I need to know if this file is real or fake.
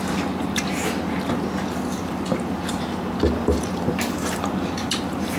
real